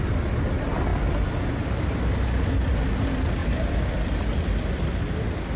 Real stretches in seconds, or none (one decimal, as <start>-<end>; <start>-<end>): 0.0-0.9; 2.1-3.4; 3.9-5.6